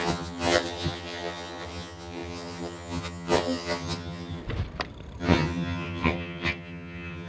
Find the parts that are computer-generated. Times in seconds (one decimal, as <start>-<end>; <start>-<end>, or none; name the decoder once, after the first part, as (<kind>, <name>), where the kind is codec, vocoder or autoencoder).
0.0-4.4 (vocoder, HiFi-GAN); 5.2-7.3